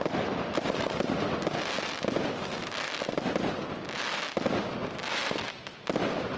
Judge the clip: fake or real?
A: real